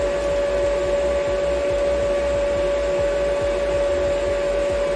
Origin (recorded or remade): recorded